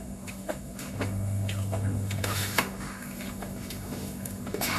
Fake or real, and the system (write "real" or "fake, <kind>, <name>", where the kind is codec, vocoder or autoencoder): fake, autoencoder, DAC-VAE